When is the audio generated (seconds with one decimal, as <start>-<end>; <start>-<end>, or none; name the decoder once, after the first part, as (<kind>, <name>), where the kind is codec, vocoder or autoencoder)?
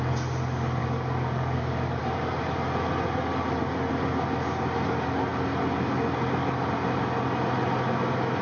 0.8-2.0 (codec, DAC)